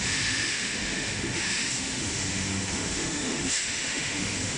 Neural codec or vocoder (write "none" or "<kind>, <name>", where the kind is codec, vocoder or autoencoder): autoencoder, DAC-VAE